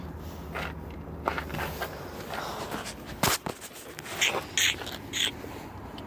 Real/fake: real